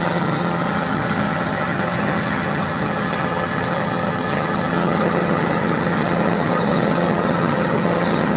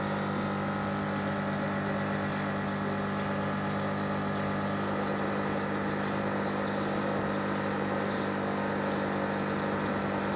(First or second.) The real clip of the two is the second